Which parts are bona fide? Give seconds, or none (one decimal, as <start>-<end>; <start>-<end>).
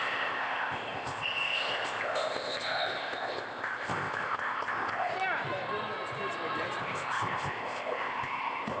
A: 5.1-6.8